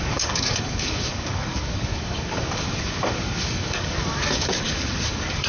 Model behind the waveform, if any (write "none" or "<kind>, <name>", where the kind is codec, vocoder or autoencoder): codec, DAC